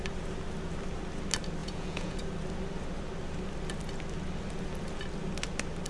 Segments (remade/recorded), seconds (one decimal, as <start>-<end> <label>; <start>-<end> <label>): 0.0-1.6 recorded; 1.6-2.2 remade; 2.2-5.9 recorded